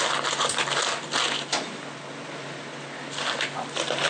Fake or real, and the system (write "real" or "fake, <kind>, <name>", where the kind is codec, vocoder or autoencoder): real